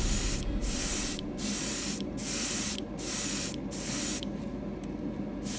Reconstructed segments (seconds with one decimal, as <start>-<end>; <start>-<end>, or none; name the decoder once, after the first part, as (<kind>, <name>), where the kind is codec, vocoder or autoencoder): none